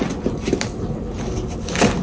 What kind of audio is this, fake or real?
real